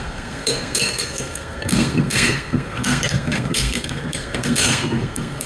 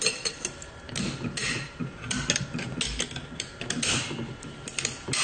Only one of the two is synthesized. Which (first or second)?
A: first